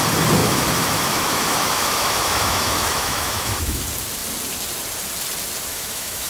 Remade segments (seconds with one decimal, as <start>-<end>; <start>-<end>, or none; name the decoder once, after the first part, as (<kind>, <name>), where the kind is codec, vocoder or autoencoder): 0.4-3.8 (autoencoder, DAC-VAE); 5.7-6.3